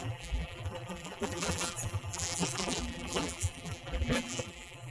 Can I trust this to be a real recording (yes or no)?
no